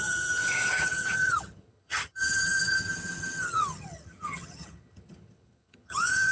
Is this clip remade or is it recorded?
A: remade